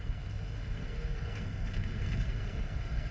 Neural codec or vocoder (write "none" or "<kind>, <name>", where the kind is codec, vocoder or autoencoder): codec, SNAC